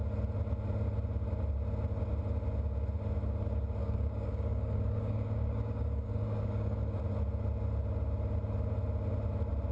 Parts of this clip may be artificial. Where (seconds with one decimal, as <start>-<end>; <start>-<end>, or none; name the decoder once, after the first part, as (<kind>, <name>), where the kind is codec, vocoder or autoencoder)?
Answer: 3.8-7.0 (codec, DAC)